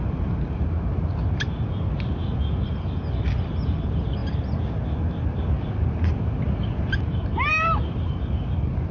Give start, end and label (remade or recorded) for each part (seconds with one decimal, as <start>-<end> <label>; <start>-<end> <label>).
0.0-8.9 recorded